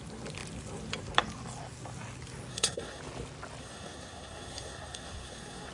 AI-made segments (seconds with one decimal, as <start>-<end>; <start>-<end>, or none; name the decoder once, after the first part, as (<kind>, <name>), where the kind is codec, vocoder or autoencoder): 2.5-3.0 (codec, SNAC); 3.6-5.7